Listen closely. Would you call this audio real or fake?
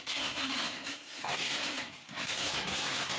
fake